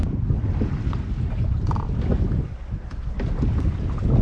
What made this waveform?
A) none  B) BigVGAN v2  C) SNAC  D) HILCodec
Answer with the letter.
A